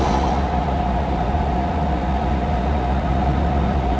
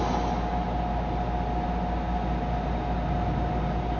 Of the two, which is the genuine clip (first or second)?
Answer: second